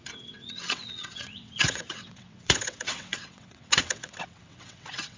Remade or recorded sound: remade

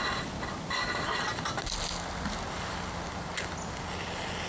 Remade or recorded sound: recorded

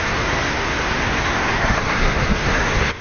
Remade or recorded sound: remade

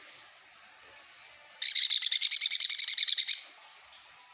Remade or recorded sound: recorded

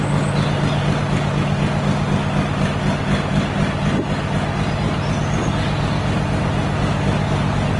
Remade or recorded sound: recorded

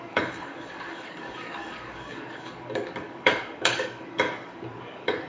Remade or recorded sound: remade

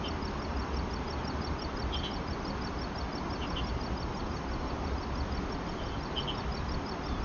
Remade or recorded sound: recorded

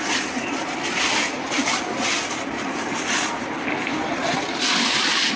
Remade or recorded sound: recorded